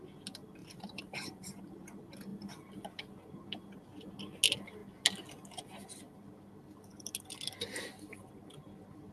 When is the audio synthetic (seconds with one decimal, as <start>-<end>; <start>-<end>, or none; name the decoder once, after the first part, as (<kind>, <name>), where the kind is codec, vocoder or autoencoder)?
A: 0.6-1.6 (vocoder, BigVGAN v2)